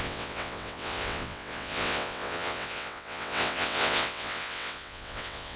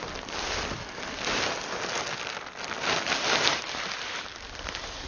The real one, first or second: second